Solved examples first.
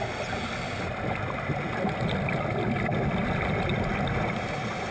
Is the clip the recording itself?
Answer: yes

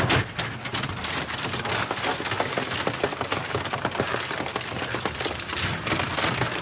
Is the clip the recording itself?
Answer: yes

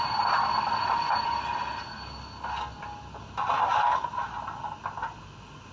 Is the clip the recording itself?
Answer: yes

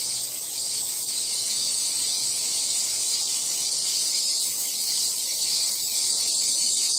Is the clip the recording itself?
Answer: no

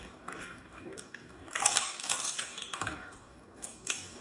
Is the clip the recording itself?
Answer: no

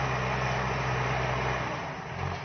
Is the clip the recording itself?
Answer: yes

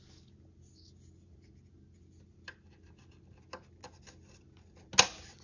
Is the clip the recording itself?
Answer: yes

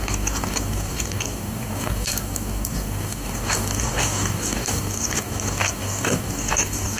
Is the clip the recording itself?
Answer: no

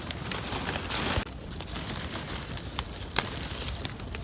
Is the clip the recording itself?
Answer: yes